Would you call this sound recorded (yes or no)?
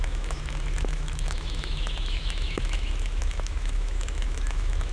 no